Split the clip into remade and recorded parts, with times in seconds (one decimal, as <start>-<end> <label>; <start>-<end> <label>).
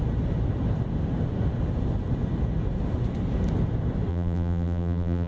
0.0-4.1 recorded; 4.1-5.3 remade